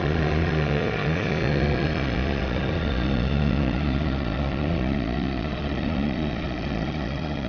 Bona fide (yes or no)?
no